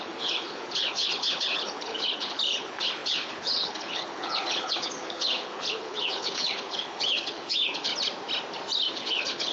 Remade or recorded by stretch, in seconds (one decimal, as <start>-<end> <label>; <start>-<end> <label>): 0.0-7.9 remade; 7.9-8.9 recorded; 8.9-9.5 remade